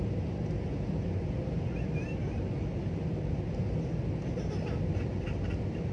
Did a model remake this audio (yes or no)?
no